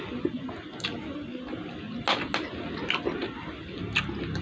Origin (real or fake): real